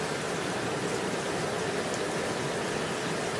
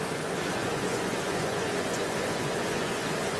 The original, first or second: first